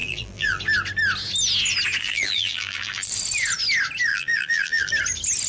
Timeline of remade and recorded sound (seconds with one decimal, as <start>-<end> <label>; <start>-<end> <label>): 0.0-0.6 remade; 0.6-2.0 recorded; 2.0-3.1 remade; 3.1-4.1 recorded; 4.1-4.9 remade; 4.9-5.5 recorded